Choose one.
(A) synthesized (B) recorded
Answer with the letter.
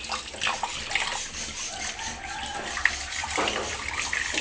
B